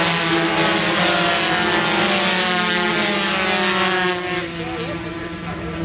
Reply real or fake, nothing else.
real